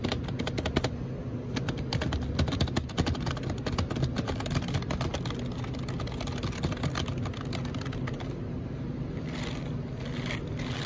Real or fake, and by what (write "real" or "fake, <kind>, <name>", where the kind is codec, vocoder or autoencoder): real